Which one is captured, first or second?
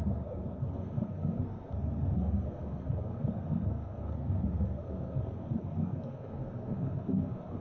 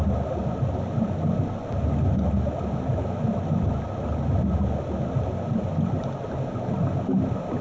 second